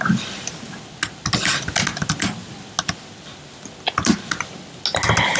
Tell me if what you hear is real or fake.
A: real